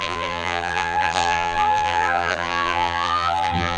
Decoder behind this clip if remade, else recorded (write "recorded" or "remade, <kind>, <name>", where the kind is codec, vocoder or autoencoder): remade, vocoder, BigVGAN v2